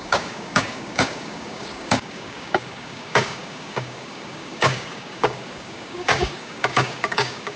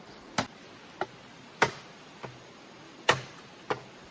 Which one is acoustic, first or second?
second